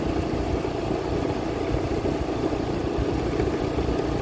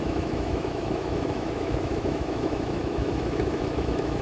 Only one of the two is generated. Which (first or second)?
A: second